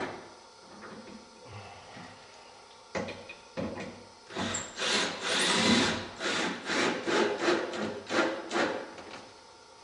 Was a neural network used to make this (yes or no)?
yes